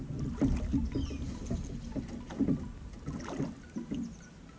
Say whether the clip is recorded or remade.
recorded